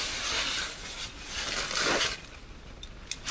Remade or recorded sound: recorded